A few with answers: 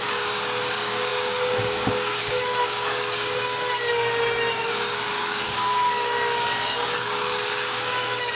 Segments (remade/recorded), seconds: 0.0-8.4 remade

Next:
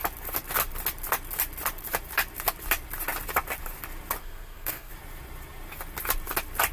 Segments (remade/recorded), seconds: 0.0-4.2 recorded; 4.2-4.9 remade; 4.9-6.7 recorded

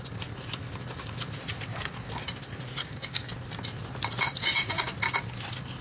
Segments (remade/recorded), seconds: 0.0-1.7 recorded; 1.7-2.3 remade; 2.3-2.8 recorded; 2.8-3.3 remade; 3.3-4.3 recorded; 4.3-4.8 remade; 4.8-5.8 recorded